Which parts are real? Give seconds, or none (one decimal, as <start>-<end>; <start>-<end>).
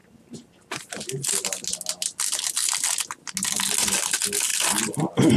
0.0-5.4